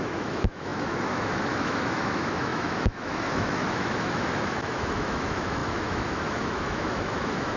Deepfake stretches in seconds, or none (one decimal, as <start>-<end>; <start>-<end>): 0.0-7.6